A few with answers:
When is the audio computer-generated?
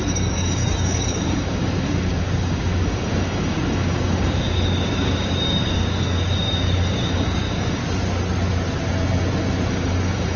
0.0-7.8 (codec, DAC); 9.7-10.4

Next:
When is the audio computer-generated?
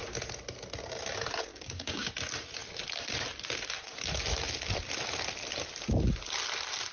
1.5-2.1 (codec, DAC)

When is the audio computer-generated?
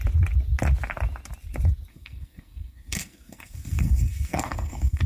1.9-5.1 (codec, SNAC)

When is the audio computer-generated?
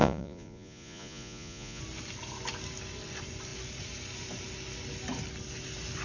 0.0-1.8 (vocoder, Vocos)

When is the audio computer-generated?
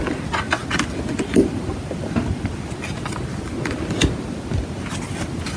none